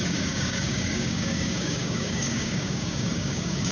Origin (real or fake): fake